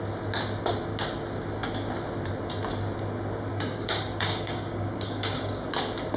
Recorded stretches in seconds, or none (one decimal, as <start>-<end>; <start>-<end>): 0.0-3.5; 5.7-6.2